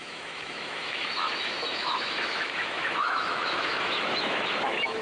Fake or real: fake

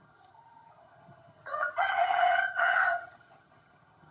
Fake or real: fake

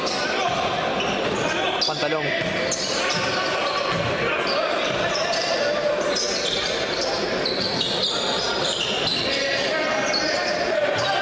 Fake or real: fake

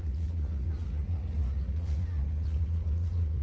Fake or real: fake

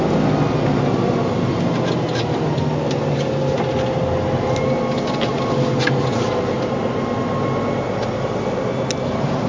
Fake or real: real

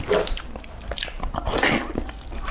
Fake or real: fake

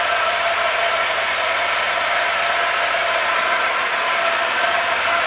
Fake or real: fake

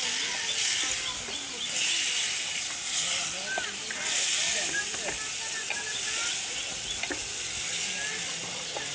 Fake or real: real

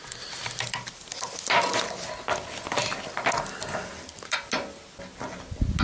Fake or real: real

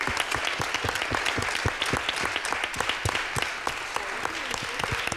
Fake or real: real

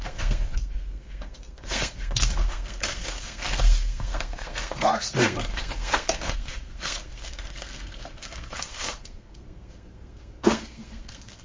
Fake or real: fake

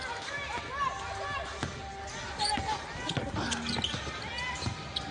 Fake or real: real